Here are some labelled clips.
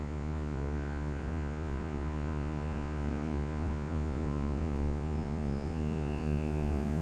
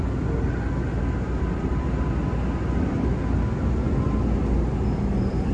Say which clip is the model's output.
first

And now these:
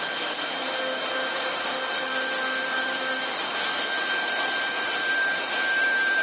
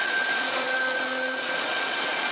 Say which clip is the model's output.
second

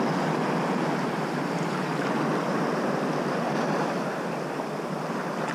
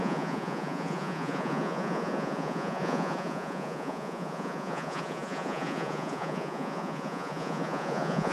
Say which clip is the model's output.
second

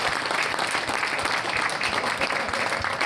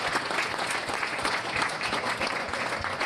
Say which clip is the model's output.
second